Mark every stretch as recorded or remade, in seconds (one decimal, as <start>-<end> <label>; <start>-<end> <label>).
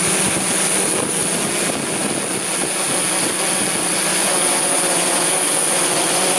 0.0-4.1 recorded; 4.1-6.4 remade